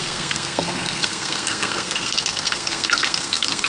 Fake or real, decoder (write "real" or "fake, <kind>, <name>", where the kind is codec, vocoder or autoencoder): fake, codec, SNAC